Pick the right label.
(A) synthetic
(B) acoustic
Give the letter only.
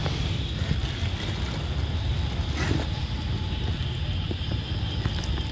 B